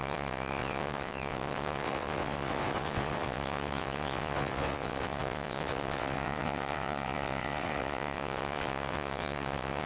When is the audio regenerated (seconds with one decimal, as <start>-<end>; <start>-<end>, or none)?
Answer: 0.0-9.9